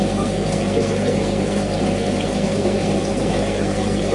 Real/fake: fake